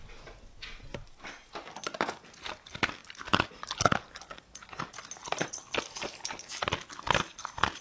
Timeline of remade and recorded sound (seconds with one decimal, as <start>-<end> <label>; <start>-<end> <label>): 0.0-7.8 recorded